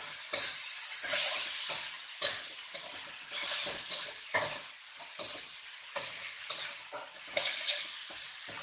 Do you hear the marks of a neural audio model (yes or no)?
no